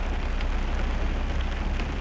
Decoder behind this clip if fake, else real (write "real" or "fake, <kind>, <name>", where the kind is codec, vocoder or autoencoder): real